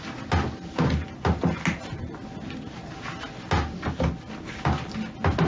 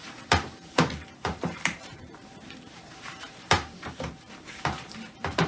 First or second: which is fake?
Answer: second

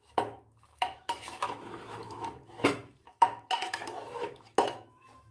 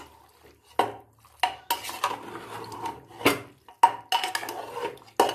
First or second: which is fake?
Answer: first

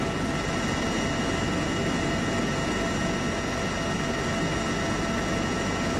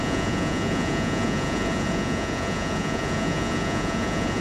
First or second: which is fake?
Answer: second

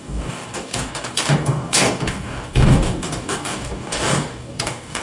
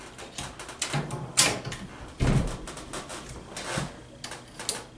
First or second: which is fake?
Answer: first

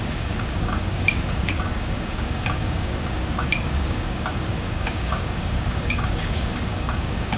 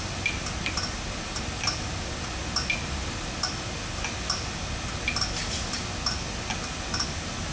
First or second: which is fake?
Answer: first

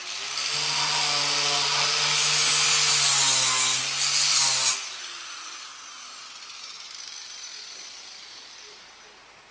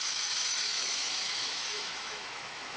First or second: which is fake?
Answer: second